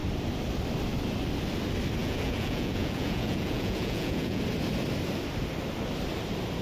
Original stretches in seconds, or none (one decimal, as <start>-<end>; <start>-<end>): 0.0-2.0; 4.4-6.6